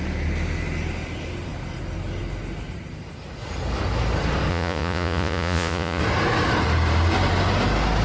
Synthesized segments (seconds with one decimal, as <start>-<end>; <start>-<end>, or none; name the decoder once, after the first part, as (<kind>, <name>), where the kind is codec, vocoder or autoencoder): 4.5-6.0 (vocoder, Vocos)